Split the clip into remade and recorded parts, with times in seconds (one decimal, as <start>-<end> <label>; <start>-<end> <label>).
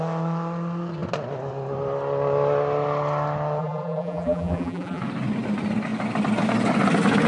0.0-3.6 recorded; 3.6-5.0 remade; 5.0-7.3 recorded